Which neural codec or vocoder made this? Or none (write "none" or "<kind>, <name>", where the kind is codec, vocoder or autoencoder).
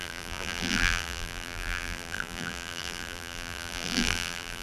vocoder, BigVGAN v2